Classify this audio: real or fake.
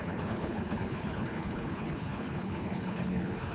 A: fake